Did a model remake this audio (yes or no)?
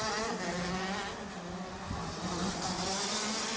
no